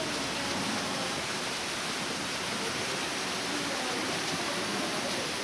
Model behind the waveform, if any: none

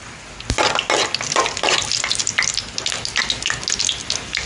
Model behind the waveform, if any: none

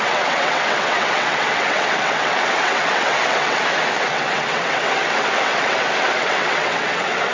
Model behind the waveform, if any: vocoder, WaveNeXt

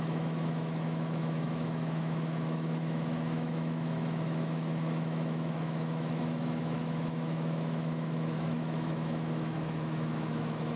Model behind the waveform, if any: autoencoder, DAC-VAE